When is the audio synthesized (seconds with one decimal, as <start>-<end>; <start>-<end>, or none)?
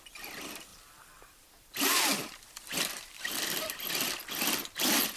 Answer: 0.7-3.8